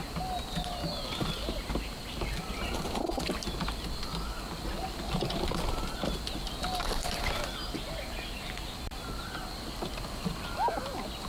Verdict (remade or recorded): recorded